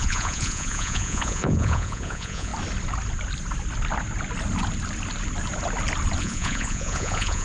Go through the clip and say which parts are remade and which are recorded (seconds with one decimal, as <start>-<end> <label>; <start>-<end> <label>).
0.0-2.5 remade; 2.5-6.2 recorded; 6.2-7.4 remade